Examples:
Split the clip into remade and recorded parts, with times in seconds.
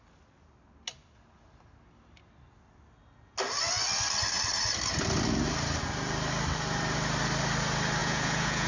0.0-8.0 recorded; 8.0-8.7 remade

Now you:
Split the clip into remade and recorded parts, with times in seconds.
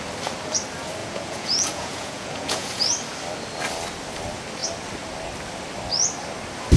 0.0-1.0 recorded; 1.0-2.8 remade; 2.8-6.8 recorded